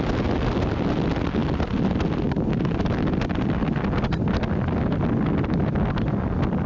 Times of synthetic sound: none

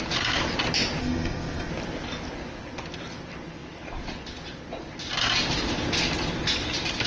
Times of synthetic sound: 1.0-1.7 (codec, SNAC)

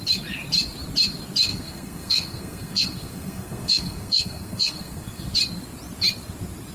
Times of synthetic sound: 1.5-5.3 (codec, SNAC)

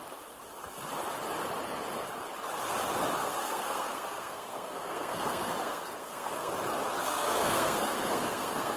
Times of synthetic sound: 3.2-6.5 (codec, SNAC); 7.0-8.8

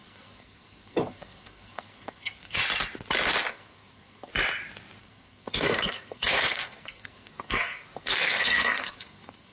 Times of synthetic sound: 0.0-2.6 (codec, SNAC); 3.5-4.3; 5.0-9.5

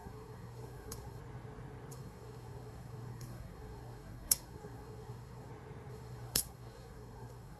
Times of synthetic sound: 0.0-1.2 (codec, SNAC); 1.9-5.5; 5.9-7.6